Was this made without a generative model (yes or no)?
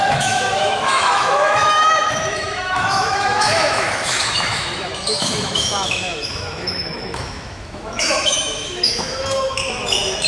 no